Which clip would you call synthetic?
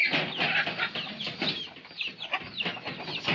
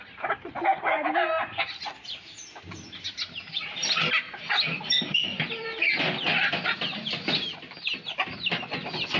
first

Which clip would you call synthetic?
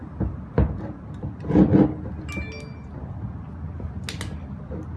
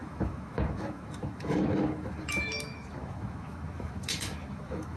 second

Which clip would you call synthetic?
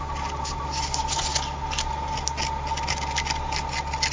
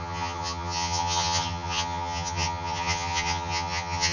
second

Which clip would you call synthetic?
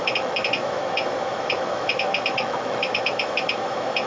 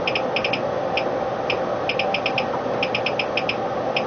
first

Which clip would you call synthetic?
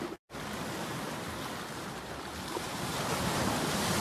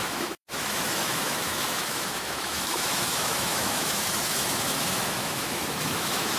second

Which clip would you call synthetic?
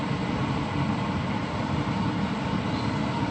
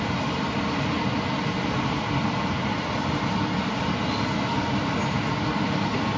first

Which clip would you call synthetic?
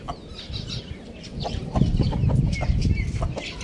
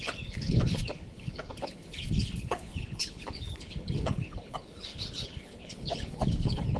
second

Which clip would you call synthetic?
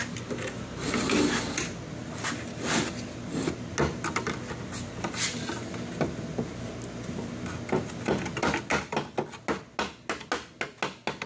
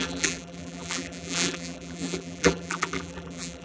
second